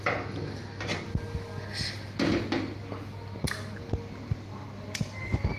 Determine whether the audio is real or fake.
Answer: real